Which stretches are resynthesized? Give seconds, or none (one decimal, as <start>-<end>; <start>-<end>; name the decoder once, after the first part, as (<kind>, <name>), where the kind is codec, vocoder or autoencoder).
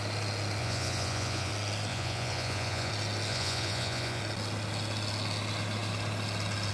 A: 0.6-1.5 (vocoder, Vocos); 1.9-2.9; 3.3-4.2